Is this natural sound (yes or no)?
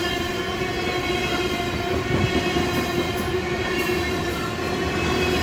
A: yes